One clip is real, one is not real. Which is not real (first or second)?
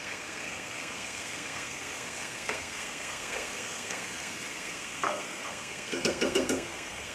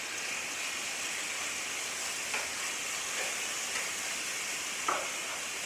first